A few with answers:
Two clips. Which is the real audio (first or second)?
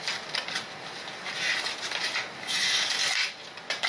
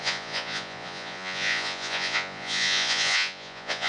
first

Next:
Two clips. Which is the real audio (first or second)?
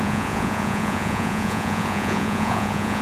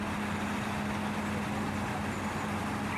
second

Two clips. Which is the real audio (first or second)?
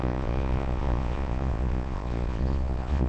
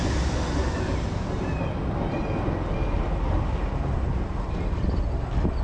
second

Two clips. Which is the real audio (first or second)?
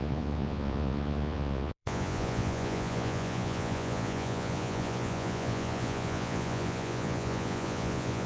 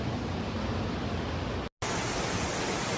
second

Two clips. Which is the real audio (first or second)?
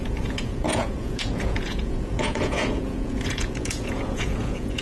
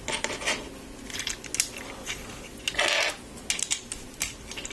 second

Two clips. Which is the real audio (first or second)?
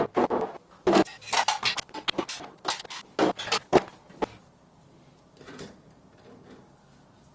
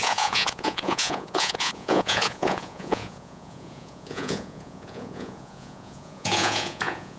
first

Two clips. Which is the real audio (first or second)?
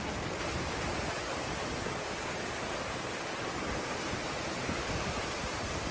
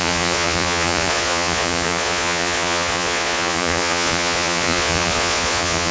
first